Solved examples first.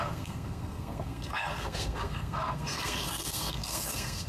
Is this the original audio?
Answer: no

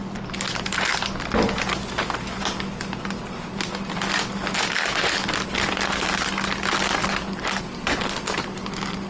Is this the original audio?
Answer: yes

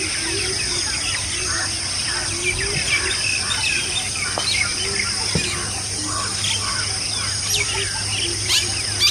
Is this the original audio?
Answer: yes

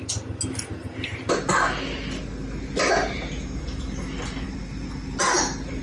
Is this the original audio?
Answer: yes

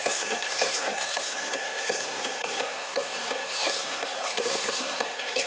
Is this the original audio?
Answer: no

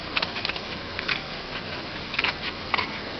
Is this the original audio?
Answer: no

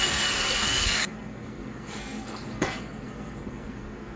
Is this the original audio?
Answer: no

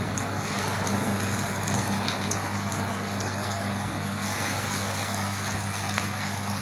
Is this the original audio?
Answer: no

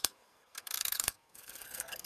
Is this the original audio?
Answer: no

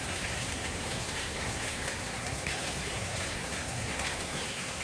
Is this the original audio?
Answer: no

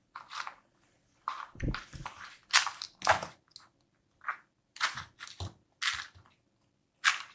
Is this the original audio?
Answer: yes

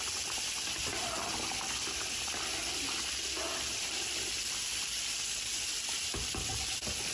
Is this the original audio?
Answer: yes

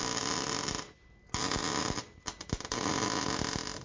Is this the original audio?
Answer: yes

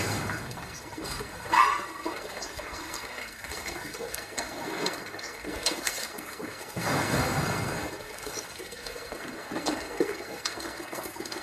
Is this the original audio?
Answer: no